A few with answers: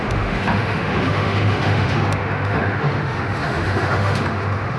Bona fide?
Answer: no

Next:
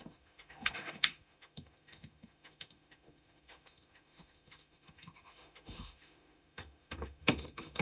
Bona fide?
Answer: no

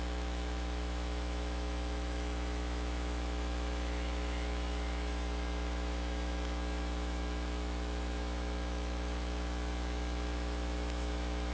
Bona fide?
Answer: no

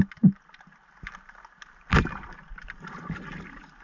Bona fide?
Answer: yes